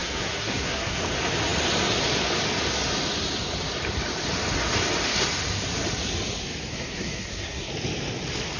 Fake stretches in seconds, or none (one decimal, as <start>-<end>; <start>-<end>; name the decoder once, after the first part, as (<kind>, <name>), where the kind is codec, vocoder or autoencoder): 0.0-1.0 (codec, SNAC); 6.7-7.7